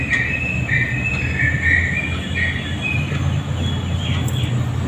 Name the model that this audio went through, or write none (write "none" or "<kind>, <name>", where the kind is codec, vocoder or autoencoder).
none